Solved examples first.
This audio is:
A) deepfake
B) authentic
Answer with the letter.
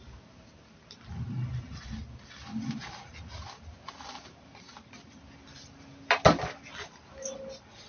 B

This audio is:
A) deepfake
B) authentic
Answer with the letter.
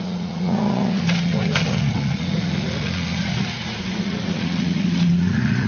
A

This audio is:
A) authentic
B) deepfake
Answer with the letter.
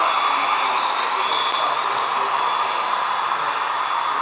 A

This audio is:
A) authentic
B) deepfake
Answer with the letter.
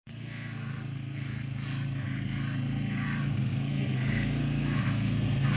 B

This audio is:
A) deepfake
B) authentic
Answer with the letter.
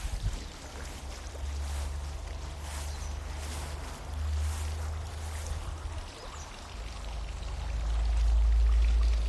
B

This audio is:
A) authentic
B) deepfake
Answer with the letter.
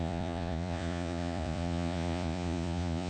B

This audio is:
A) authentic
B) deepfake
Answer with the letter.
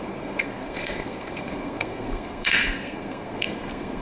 B